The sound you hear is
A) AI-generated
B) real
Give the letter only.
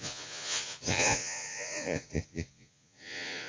A